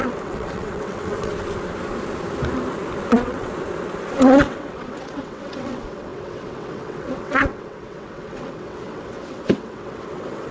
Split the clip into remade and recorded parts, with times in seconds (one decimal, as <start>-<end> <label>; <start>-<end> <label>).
0.0-1.3 remade; 1.3-3.1 recorded; 3.1-3.5 remade; 3.5-4.1 recorded; 4.1-10.5 remade